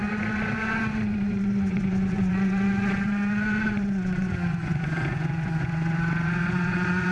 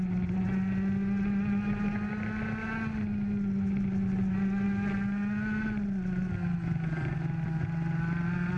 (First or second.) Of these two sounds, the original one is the second